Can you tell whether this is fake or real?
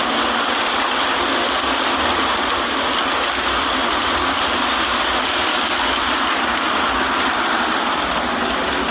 real